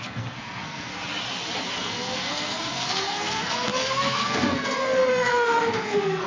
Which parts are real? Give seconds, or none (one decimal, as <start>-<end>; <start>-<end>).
0.9-1.7